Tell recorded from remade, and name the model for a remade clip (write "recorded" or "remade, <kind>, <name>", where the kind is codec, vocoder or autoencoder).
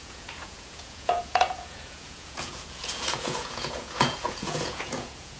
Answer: remade, vocoder, Vocos